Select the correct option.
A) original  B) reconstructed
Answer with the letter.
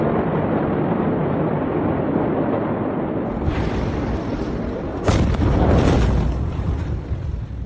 A